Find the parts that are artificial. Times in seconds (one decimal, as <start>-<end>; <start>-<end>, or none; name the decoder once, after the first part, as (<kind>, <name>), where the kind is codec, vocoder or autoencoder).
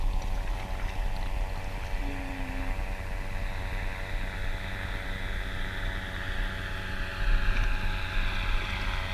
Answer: none